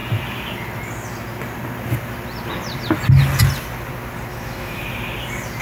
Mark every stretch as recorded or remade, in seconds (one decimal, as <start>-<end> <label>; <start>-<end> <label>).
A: 0.0-4.3 recorded; 4.3-4.8 remade; 4.8-5.6 recorded